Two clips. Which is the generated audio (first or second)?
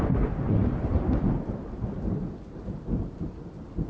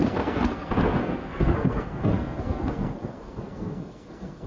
second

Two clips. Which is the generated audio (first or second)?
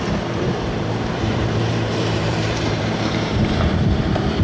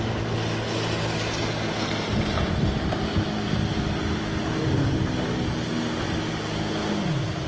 first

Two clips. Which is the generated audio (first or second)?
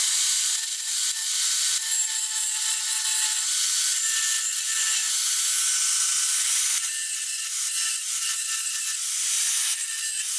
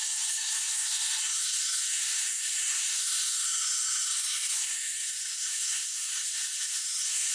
second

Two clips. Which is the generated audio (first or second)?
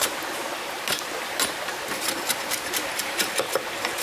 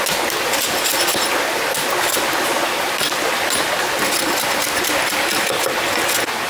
first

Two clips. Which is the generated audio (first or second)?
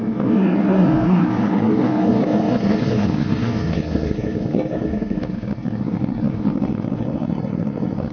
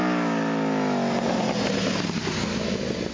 first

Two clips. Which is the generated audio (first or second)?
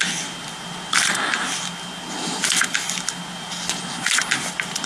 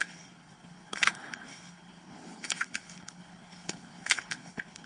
second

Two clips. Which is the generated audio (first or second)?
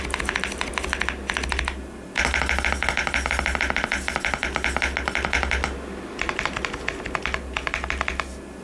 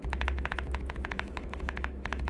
second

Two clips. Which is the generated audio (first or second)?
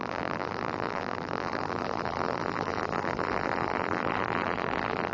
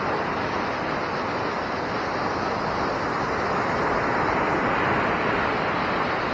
first